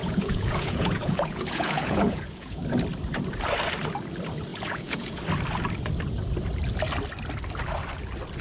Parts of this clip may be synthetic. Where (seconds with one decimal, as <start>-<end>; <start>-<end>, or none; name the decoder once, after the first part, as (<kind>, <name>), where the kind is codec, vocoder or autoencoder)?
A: 0.0-2.6 (vocoder, Vocos); 4.5-5.2